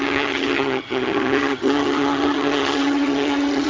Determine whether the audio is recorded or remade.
remade